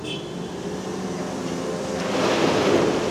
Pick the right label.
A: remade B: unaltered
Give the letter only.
B